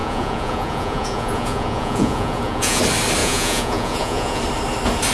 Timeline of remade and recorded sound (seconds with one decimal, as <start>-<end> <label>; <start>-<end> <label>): 0.0-2.8 remade; 2.8-3.2 recorded; 3.2-4.4 remade; 4.4-5.1 recorded